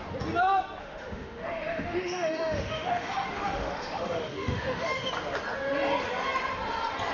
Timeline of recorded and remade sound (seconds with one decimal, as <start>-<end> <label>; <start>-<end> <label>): 0.0-0.8 recorded; 0.8-5.1 remade; 5.1-7.1 recorded